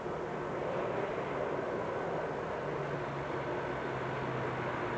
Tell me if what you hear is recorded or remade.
recorded